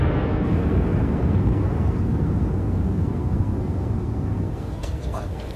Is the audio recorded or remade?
remade